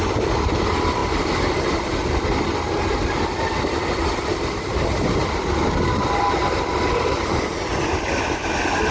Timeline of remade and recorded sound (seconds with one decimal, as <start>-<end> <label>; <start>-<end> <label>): 0.0-8.9 recorded